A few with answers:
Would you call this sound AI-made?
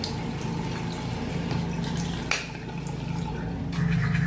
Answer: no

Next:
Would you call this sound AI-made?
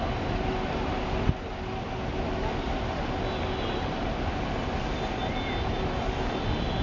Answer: no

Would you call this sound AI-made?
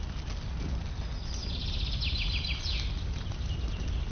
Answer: no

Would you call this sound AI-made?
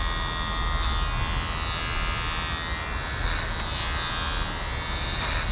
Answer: no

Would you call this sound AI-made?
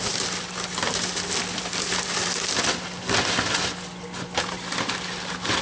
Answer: no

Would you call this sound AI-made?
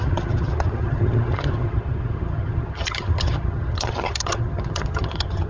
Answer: yes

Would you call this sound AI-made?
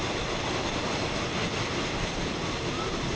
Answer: no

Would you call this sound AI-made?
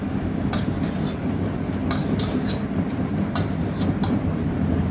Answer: no